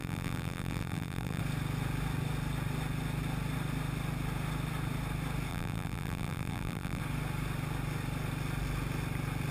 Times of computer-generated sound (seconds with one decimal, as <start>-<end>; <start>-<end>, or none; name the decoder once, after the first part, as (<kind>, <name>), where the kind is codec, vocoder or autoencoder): 0.0-1.4 (vocoder, BigVGAN v2); 5.5-7.0